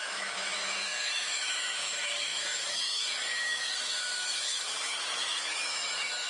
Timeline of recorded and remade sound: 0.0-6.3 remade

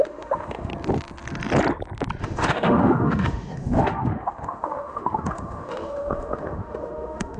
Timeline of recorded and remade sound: 0.0-0.7 remade; 0.7-2.2 recorded; 2.2-7.4 remade

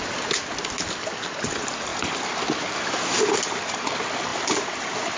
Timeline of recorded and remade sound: 0.0-5.2 recorded

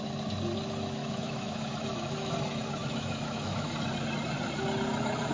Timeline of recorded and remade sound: 0.0-1.0 recorded; 1.0-2.3 remade; 2.3-2.8 recorded; 2.8-3.7 remade; 3.7-5.3 recorded

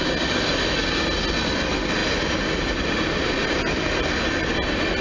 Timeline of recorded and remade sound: 0.0-5.0 recorded

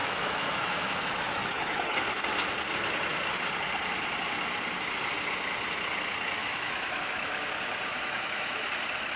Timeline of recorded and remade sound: 0.0-2.0 remade; 2.0-6.4 recorded; 6.4-7.3 remade; 7.3-7.9 recorded; 7.9-8.7 remade; 8.7-9.2 recorded

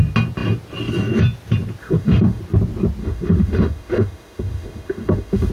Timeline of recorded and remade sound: 0.0-1.8 recorded; 1.8-2.4 remade; 2.4-3.0 recorded; 3.0-5.5 remade